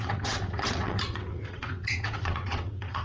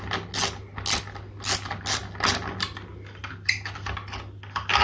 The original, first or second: second